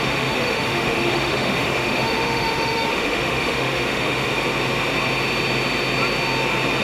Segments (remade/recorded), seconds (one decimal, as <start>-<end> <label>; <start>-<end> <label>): 0.0-4.3 remade; 4.3-6.8 recorded